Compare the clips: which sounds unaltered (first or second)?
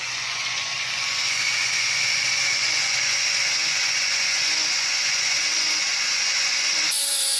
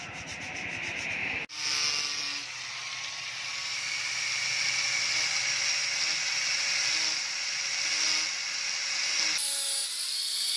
second